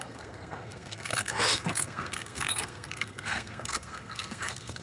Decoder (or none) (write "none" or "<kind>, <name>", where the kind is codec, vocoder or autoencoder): codec, SNAC